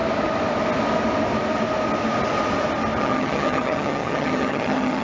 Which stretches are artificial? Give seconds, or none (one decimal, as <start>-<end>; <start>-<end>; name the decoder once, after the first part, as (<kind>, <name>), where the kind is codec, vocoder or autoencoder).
3.0-5.0 (vocoder, HiFi-GAN)